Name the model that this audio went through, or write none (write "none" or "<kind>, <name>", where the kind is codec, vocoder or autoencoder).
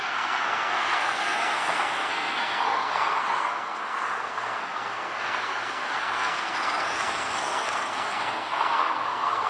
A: codec, SNAC